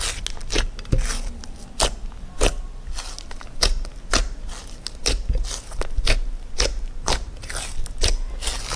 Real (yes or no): yes